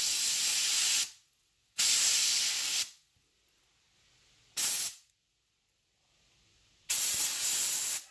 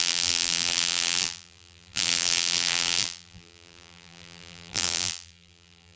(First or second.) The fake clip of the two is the second